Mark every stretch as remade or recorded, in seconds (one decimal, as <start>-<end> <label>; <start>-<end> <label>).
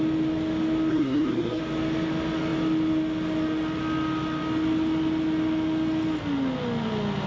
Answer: 0.0-0.9 recorded; 0.9-1.6 remade; 1.6-7.3 recorded